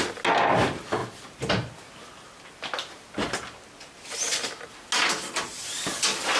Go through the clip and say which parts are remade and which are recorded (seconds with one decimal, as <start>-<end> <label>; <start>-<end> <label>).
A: 0.0-6.4 recorded